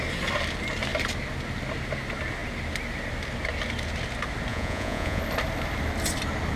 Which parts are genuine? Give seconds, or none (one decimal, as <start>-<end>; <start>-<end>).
0.0-4.5; 5.2-6.6

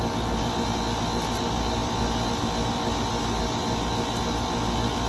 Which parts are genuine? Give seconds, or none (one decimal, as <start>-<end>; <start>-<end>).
0.0-5.1

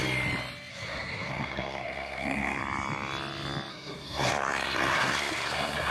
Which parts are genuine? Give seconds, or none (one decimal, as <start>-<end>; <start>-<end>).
0.0-0.7; 2.6-3.7

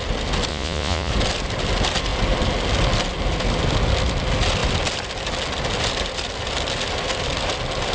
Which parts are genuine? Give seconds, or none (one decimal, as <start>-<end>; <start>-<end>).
0.0-0.5; 1.1-7.9

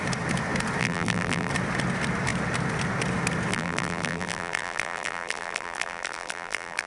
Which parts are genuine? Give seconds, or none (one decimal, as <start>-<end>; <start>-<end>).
0.0-0.8; 1.5-3.5

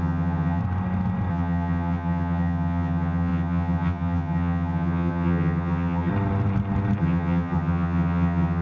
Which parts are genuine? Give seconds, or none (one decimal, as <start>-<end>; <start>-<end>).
0.6-1.3; 6.1-7.0

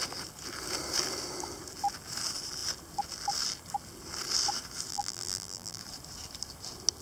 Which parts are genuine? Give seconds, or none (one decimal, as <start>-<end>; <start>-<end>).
0.0-4.9; 5.8-7.0

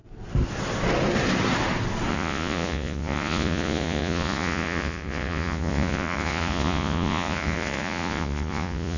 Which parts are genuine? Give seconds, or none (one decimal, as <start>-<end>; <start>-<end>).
0.0-2.1